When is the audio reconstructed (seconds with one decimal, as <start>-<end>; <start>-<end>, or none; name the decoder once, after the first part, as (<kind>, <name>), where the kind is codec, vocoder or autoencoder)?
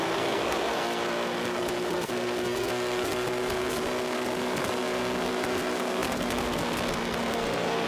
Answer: 0.0-7.9 (codec, SNAC)